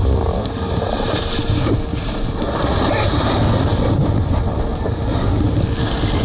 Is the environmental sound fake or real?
real